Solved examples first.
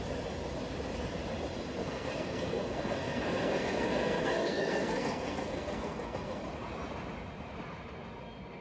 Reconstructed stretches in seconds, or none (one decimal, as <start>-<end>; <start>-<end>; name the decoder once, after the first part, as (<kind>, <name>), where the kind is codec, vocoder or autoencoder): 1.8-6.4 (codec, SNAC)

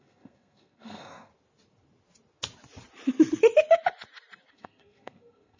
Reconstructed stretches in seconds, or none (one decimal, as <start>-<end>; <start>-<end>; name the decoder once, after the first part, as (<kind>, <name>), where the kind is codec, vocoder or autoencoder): 0.0-1.3 (codec, SNAC); 4.5-5.6

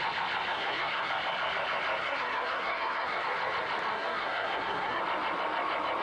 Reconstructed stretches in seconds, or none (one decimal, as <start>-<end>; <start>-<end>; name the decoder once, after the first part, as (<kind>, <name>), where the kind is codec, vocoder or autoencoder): 0.5-1.1 (codec, SNAC); 2.0-3.2; 3.9-5.0

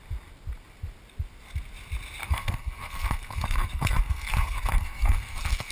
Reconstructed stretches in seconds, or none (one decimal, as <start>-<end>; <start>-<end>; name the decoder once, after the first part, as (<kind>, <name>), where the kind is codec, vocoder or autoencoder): 2.2-5.7 (codec, SNAC)

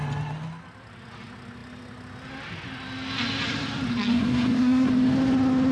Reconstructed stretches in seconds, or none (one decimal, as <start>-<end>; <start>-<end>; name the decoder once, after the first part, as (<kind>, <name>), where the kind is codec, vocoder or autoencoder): 4.1-4.9 (codec, SNAC)

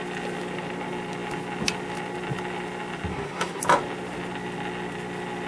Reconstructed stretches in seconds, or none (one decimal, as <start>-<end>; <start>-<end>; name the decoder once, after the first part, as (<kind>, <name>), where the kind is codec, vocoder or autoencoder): 3.1-3.6 (codec, SNAC)

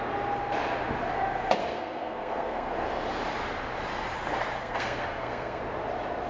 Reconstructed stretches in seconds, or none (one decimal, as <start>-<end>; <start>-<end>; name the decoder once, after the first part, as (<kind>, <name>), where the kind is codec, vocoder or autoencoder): 1.6-2.7 (codec, SNAC); 4.6-5.6

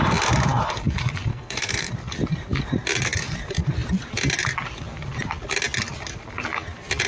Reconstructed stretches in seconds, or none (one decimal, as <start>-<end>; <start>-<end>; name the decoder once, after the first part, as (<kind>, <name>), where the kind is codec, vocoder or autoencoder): 1.3-1.9 (codec, SNAC)